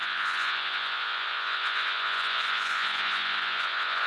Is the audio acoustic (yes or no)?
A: no